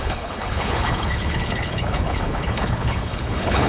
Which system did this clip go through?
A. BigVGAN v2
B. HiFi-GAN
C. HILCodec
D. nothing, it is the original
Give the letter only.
C